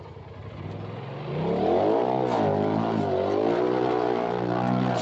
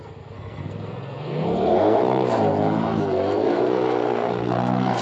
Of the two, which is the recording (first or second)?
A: first